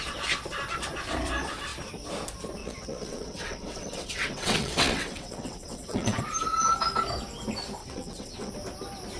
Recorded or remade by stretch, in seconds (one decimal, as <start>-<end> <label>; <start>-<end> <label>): 0.0-2.6 recorded; 2.6-6.2 remade; 6.2-7.8 recorded; 7.8-8.5 remade; 8.5-9.2 recorded